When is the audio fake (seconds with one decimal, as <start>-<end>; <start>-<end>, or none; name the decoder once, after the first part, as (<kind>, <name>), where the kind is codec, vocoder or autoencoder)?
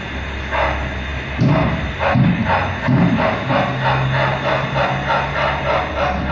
none